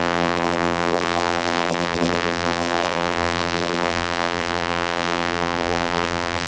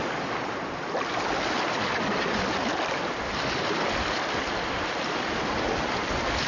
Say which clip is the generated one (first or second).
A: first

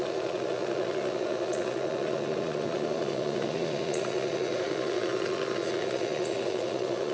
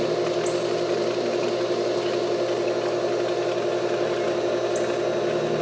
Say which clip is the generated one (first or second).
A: first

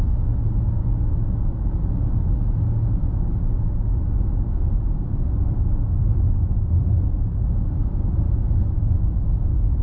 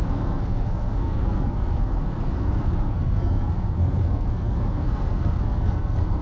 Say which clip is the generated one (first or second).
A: second